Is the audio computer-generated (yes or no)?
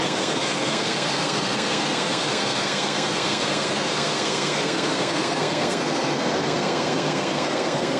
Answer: yes